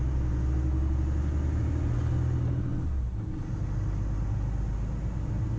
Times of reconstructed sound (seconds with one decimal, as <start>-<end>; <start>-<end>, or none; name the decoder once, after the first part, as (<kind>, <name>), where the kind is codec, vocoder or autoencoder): none